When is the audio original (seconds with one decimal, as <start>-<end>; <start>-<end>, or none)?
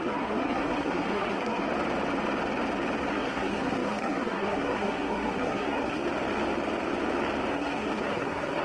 1.7-3.1; 6.0-7.5